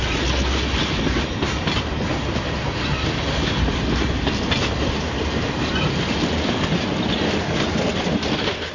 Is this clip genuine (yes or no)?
yes